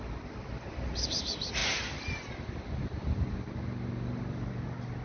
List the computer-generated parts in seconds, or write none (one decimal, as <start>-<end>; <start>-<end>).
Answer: none